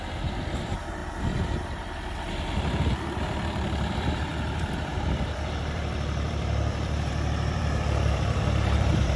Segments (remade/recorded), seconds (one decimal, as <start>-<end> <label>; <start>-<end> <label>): 0.0-1.0 remade; 1.0-1.6 recorded; 1.6-9.2 remade